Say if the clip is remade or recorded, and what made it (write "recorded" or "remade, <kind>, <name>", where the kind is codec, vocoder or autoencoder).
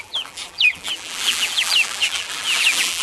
remade, vocoder, BigVGAN v2